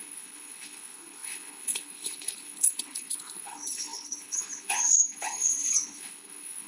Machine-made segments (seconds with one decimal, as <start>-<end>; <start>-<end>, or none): 0.0-6.7